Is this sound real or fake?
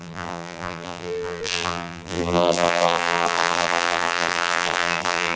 fake